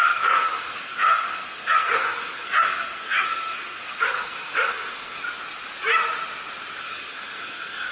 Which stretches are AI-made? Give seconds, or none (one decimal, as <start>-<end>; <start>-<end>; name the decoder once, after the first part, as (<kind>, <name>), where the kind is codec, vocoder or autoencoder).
0.0-5.2 (codec, SNAC); 6.8-7.9